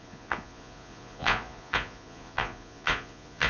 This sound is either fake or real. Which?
fake